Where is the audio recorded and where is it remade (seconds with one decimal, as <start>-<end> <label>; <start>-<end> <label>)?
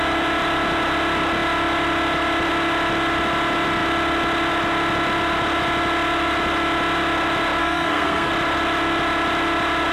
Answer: 0.0-7.6 recorded; 7.6-8.3 remade; 8.3-9.9 recorded